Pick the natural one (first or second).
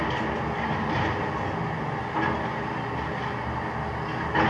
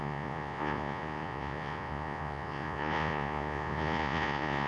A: first